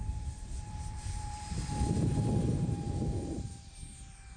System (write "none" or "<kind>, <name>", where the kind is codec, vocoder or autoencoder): vocoder, BigVGAN v2